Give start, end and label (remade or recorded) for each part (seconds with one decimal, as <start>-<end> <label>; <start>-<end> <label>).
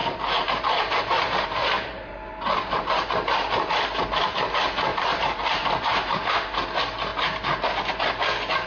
0.0-3.1 remade; 3.1-4.9 recorded; 4.9-6.3 remade; 6.3-7.1 recorded; 7.1-7.7 remade; 7.7-8.7 recorded